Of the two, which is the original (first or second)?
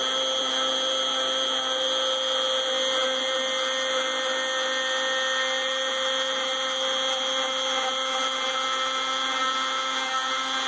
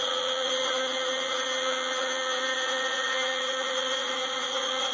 first